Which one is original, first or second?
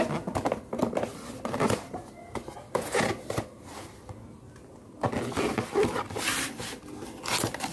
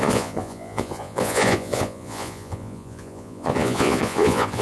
first